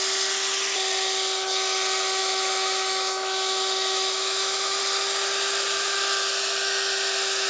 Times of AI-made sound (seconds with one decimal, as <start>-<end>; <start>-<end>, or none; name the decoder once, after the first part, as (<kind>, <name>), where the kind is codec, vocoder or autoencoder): 2.2-4.8 (autoencoder, DAC-VAE)